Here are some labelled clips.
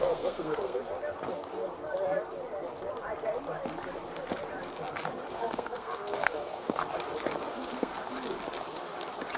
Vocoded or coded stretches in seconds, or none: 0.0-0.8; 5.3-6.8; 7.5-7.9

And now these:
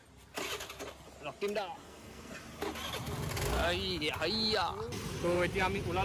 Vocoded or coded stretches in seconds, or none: 1.8-2.4